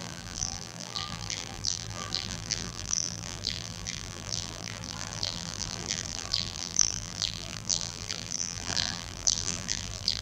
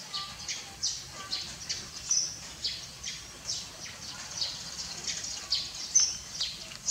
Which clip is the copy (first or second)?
first